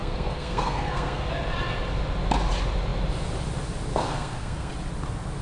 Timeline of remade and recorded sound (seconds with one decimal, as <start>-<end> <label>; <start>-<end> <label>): 0.0-1.2 remade; 1.2-3.9 recorded; 3.9-4.7 remade; 4.7-5.4 recorded